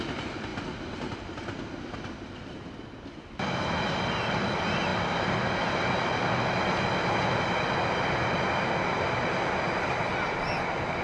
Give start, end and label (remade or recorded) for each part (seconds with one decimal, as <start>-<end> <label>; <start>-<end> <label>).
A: 0.0-11.0 recorded